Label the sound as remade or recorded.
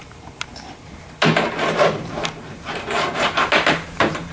remade